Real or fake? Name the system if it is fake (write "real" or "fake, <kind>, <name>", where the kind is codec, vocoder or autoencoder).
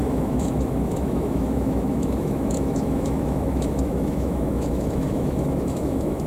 fake, autoencoder, DAC-VAE